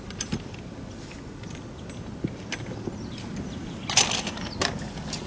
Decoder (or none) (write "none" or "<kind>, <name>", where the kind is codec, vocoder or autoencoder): none